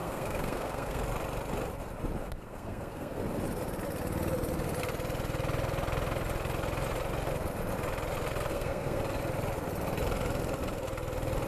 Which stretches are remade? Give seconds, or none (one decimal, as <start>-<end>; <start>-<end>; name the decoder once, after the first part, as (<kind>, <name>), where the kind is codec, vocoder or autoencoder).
0.0-1.0 (codec, SNAC); 2.2-3.2; 8.5-9.0